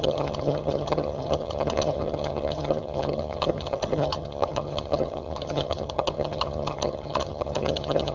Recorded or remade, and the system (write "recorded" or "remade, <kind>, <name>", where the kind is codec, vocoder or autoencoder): remade, vocoder, HiFi-GAN